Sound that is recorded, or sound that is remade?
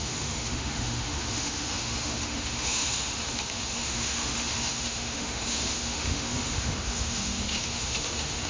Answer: remade